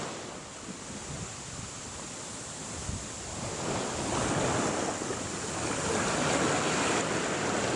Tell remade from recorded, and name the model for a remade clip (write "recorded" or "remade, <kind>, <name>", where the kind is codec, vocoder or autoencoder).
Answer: recorded